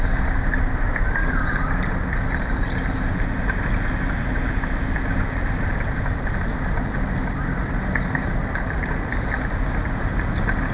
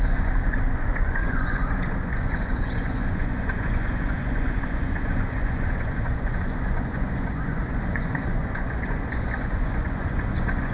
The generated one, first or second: second